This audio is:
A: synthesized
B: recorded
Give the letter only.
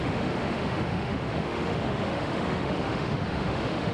A